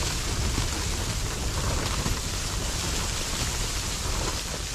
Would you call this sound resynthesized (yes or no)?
no